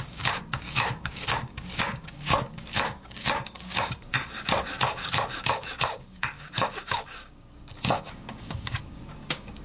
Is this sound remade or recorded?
remade